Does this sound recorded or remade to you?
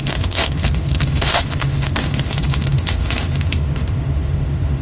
remade